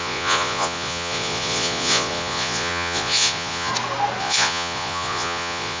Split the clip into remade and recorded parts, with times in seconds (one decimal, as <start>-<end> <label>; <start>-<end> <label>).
0.0-3.7 remade; 3.7-4.2 recorded; 4.2-5.8 remade